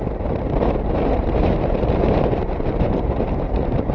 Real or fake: fake